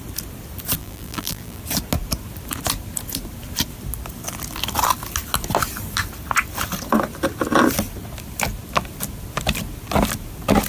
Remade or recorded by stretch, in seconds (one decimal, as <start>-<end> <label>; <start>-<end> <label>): 0.0-0.8 recorded; 0.8-1.6 remade; 1.6-10.7 recorded

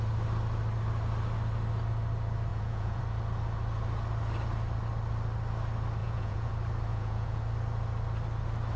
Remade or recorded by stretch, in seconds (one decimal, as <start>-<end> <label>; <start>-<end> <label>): 0.0-2.5 recorded; 2.5-3.0 remade; 3.0-6.0 recorded; 6.0-6.5 remade; 6.5-6.9 recorded; 6.9-7.4 remade; 7.4-8.8 recorded

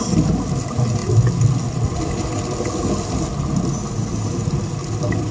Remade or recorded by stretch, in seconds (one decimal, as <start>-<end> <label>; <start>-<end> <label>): 0.0-5.3 recorded

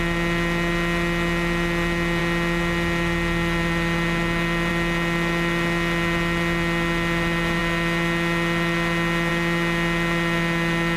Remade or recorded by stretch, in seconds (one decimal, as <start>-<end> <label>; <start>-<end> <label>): 0.0-11.0 recorded

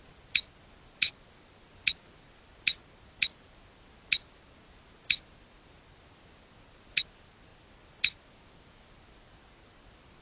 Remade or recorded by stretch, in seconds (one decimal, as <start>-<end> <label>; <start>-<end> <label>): 0.0-10.2 recorded

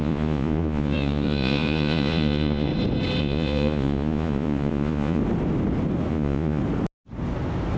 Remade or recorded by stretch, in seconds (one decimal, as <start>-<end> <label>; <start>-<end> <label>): 0.0-2.7 remade; 2.7-3.2 recorded; 3.2-5.2 remade; 5.2-6.1 recorded; 6.1-6.6 remade; 6.6-7.8 recorded

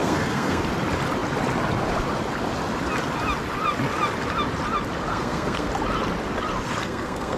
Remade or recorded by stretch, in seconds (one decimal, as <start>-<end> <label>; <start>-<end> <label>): 0.0-0.6 remade; 0.6-5.1 recorded; 5.1-5.7 remade; 5.7-6.8 recorded; 6.8-7.4 remade

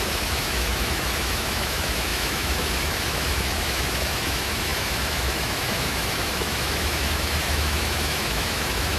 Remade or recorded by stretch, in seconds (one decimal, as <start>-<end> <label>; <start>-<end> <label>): 0.0-9.0 remade